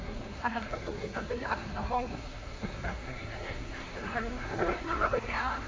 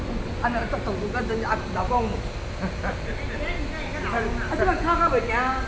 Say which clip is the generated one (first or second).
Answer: first